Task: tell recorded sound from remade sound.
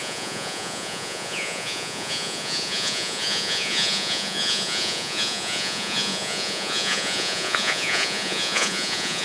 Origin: remade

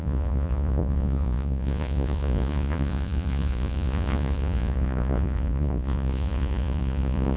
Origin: remade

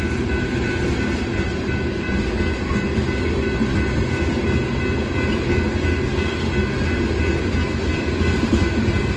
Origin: recorded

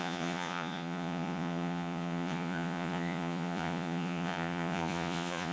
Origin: remade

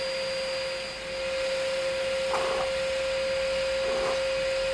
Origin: recorded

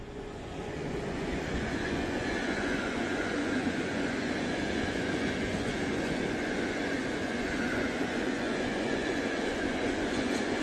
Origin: remade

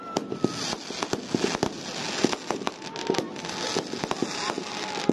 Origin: recorded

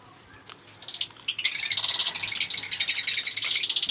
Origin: recorded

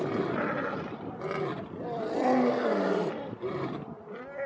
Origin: recorded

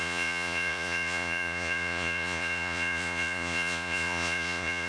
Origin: remade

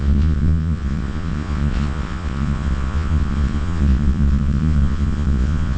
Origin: remade